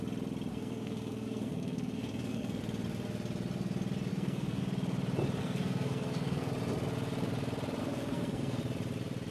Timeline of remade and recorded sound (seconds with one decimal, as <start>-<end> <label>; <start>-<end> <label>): 0.0-0.5 recorded; 0.5-2.6 remade; 2.6-4.1 recorded; 4.1-4.6 remade; 4.6-5.4 recorded; 5.4-6.5 remade; 6.5-7.8 recorded; 7.8-8.6 remade; 8.6-9.3 recorded

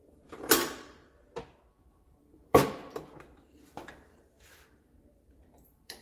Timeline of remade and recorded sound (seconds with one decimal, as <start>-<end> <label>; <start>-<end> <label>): 0.0-1.0 remade; 1.0-1.8 recorded; 1.8-2.8 remade; 2.8-3.4 recorded; 3.4-6.0 remade

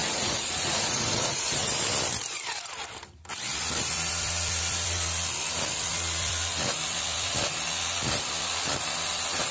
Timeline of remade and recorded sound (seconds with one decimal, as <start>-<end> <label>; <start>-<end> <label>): 0.0-1.7 remade; 1.7-9.5 recorded

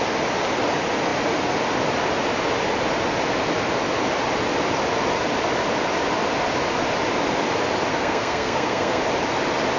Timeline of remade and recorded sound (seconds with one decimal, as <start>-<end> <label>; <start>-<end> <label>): 0.0-7.9 recorded; 7.9-9.0 remade; 9.0-9.8 recorded

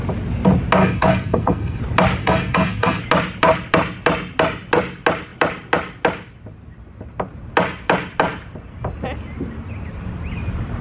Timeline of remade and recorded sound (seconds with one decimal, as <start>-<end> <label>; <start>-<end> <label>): 0.0-0.8 recorded; 0.8-1.8 remade; 1.8-2.2 recorded; 2.2-3.0 remade; 3.0-10.8 recorded

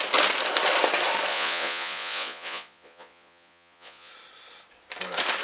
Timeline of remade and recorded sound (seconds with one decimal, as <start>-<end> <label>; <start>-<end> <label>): 0.0-1.3 recorded; 1.3-4.1 remade; 4.1-5.4 recorded

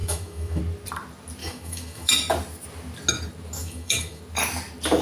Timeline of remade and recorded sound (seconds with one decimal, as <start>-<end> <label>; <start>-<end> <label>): 0.0-0.6 remade; 0.6-1.4 recorded; 1.4-2.1 remade; 2.1-3.6 recorded; 3.6-4.2 remade; 4.2-5.0 recorded